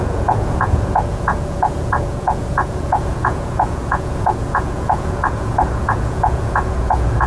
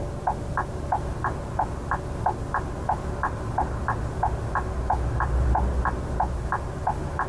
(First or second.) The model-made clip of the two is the first